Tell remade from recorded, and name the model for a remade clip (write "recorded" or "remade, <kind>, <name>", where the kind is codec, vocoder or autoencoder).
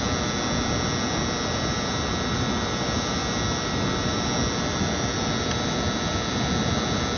recorded